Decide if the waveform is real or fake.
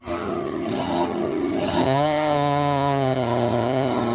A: fake